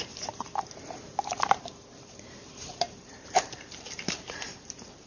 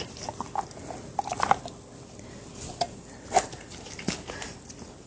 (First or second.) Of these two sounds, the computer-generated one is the first